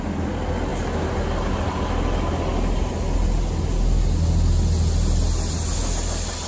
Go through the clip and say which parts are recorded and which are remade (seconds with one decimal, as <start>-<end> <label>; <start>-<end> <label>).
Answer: 0.0-6.5 recorded